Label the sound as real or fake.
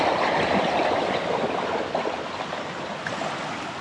real